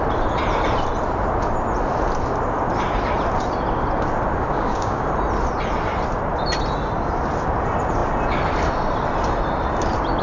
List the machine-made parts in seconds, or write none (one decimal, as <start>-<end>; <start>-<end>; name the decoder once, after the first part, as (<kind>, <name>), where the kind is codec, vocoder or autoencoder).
4.5-5.1 (codec, DAC)